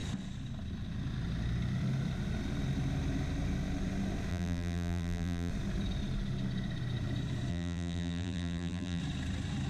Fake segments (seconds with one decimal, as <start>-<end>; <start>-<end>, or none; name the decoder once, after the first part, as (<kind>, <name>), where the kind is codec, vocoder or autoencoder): 4.3-5.5 (vocoder, BigVGAN v2); 7.5-9.0